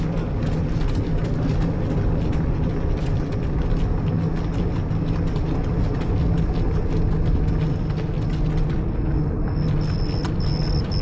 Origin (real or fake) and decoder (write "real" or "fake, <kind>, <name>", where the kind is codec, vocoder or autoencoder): real